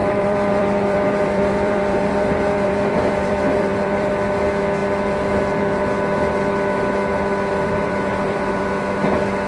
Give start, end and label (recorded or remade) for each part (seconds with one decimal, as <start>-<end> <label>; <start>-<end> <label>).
0.0-4.1 remade; 4.1-7.5 recorded; 7.5-8.7 remade; 8.7-9.5 recorded